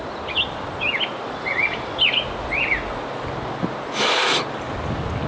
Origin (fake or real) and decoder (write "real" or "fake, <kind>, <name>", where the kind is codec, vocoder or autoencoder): real